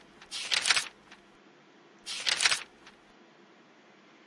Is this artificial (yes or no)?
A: no